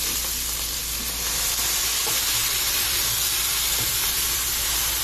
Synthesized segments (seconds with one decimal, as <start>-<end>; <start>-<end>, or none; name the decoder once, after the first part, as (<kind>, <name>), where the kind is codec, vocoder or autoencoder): 2.4-4.5 (vocoder, BigVGAN v2)